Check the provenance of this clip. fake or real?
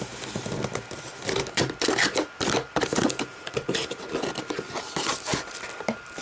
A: fake